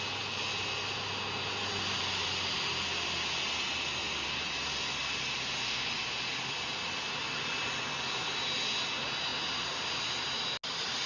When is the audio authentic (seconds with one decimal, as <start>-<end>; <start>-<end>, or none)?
0.0-11.1